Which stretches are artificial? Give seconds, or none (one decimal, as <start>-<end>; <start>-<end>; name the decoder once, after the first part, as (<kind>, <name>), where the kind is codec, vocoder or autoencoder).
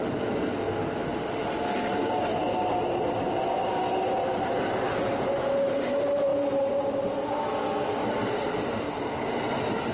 none